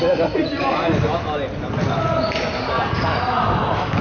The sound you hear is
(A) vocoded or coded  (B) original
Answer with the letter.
B